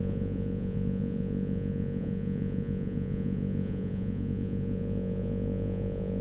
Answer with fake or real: fake